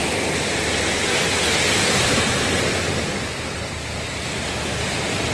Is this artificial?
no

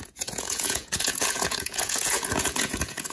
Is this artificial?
yes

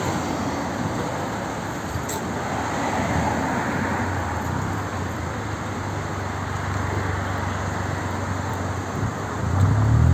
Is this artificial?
no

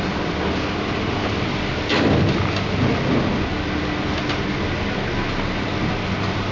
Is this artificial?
no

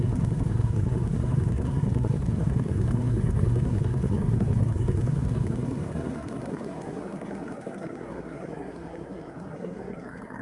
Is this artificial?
yes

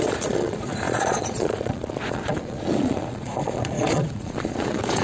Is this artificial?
yes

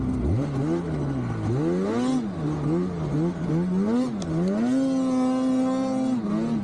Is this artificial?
no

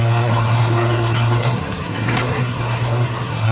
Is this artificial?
yes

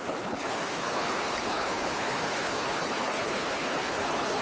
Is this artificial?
yes